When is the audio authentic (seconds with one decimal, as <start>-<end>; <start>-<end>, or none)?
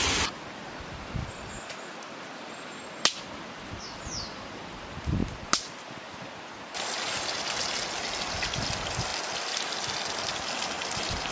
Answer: 0.0-11.3